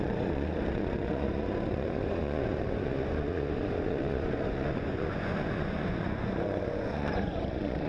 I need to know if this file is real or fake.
fake